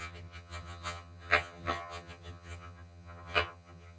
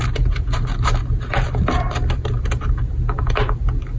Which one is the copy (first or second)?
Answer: first